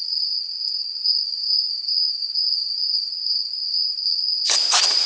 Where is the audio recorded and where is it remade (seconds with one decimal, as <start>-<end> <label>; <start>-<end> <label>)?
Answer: 0.0-3.8 remade; 3.8-5.1 recorded